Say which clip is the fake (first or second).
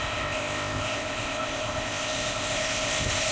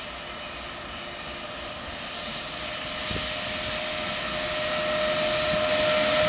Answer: first